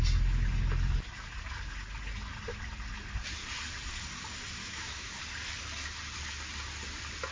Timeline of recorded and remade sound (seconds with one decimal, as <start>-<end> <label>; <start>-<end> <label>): 0.0-4.6 recorded; 4.6-5.2 remade; 5.2-7.3 recorded